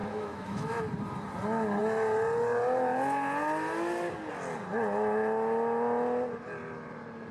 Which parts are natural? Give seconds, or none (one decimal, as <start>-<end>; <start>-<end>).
0.8-7.3